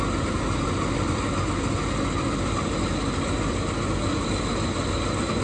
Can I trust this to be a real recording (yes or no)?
yes